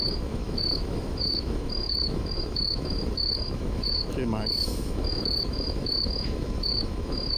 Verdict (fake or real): fake